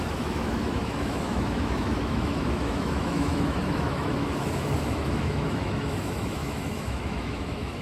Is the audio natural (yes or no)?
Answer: no